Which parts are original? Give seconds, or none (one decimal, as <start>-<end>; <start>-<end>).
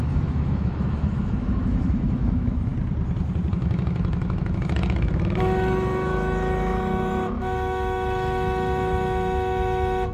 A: 2.7-3.5